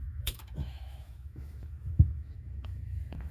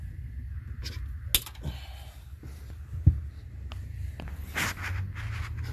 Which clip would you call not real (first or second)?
first